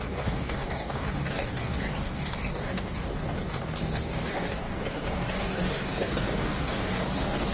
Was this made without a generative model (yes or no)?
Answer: no